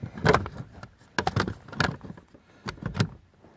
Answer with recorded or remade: recorded